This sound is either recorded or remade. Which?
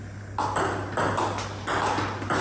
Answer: recorded